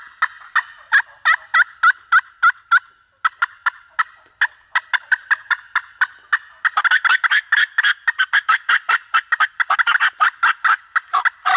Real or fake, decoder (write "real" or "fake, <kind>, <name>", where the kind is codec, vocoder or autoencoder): real